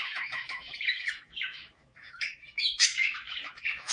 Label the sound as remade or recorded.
remade